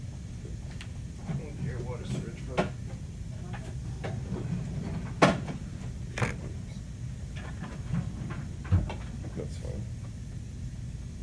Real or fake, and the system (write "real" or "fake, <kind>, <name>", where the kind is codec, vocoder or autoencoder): real